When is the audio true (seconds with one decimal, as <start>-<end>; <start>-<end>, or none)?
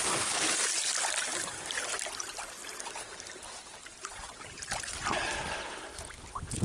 0.0-1.3; 2.0-2.6; 5.9-6.6